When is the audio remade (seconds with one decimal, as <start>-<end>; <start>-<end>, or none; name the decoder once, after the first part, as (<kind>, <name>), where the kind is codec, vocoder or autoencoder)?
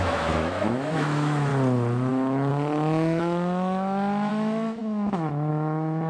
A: 0.0-1.5 (autoencoder, DAC-VAE); 2.1-6.1